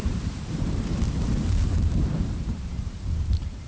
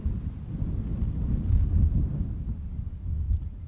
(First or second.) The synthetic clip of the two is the first